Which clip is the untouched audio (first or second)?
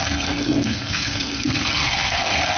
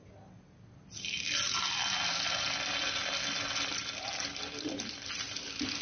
second